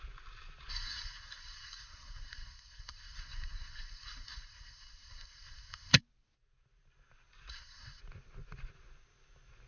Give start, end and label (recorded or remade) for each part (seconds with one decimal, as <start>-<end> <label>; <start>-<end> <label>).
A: 0.0-0.7 recorded; 0.7-6.0 remade; 6.0-7.5 recorded; 7.5-8.0 remade; 8.0-9.7 recorded